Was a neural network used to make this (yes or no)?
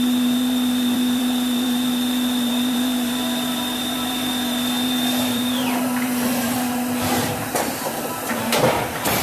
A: yes